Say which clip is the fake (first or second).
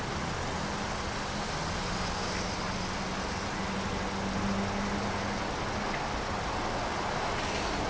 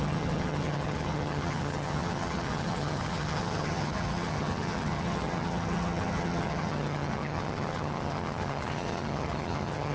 second